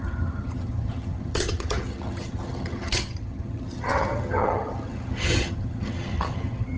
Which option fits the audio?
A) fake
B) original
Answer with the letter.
A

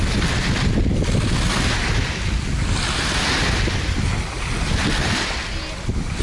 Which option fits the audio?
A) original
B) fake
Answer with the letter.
A